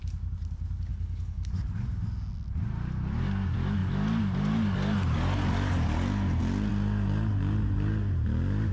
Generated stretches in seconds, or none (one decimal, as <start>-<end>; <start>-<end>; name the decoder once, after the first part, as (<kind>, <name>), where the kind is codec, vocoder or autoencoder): 0.9-1.5 (codec, HILCodec)